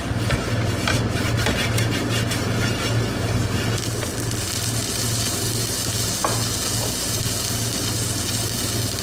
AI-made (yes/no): no